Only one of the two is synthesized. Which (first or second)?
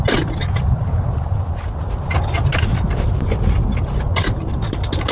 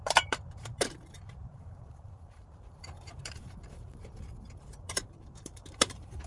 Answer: second